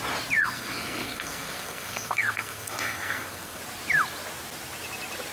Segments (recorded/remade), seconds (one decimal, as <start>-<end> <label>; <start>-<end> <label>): 0.0-0.4 recorded; 0.4-3.6 remade; 3.6-5.3 recorded